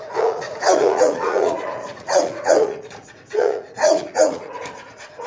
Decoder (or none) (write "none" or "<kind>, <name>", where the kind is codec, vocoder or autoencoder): vocoder, Vocos